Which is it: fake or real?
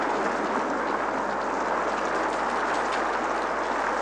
real